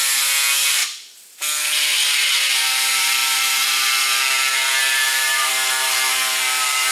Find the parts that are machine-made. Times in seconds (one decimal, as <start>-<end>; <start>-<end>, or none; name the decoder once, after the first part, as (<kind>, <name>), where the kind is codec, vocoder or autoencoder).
0.0-0.8 (vocoder, BigVGAN v2); 2.5-6.9